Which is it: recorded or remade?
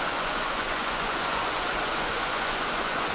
remade